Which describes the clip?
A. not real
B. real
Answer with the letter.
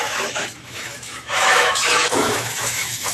A